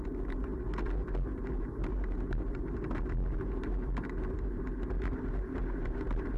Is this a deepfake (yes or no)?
no